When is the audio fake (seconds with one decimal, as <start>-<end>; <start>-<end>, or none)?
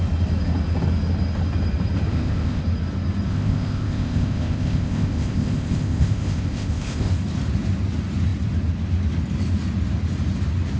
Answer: 2.1-2.6; 3.3-7.1